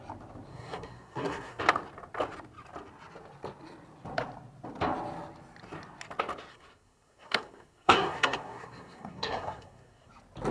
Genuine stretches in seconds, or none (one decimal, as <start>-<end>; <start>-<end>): 0.0-0.5; 1.6-6.5; 10.1-10.5